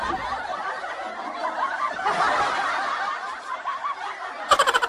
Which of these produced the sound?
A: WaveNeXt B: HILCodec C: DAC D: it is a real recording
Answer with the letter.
D